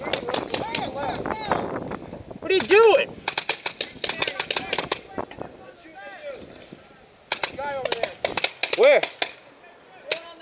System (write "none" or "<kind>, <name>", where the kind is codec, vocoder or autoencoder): none